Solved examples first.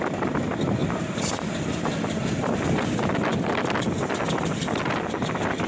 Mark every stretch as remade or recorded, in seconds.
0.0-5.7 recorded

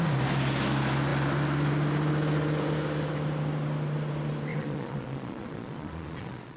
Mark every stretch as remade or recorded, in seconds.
0.0-4.5 recorded; 4.5-6.6 remade

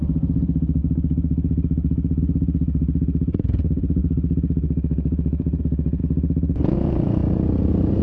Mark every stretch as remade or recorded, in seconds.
0.0-0.8 remade; 0.8-2.2 recorded; 2.2-6.0 remade; 6.0-6.6 recorded; 6.6-7.2 remade; 7.2-8.0 recorded

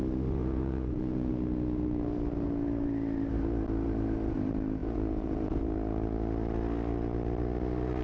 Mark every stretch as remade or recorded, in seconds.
0.0-0.4 recorded; 0.4-1.3 remade; 1.3-4.8 recorded; 4.8-5.6 remade; 5.6-8.0 recorded